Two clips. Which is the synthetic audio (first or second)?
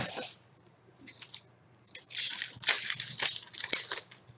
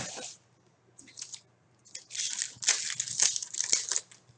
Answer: first